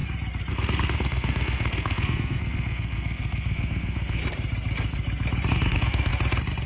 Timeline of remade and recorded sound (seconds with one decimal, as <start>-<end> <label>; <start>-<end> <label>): 0.0-0.5 recorded; 0.5-4.2 remade; 4.2-5.5 recorded; 5.5-6.1 remade; 6.1-6.7 recorded